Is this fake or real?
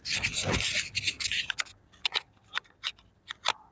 real